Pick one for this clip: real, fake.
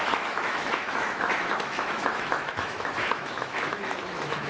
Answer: fake